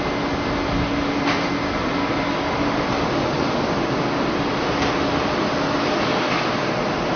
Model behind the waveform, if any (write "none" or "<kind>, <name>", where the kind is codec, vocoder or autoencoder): none